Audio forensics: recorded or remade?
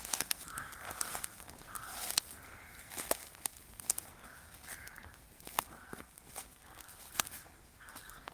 remade